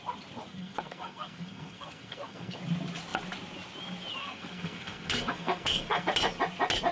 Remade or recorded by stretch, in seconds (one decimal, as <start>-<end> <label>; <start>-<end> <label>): 0.0-0.5 recorded; 0.5-2.6 remade; 2.6-4.2 recorded; 4.2-6.1 remade; 6.1-6.9 recorded